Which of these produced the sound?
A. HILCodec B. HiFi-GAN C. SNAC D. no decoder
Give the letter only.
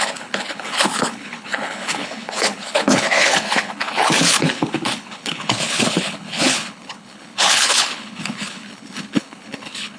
A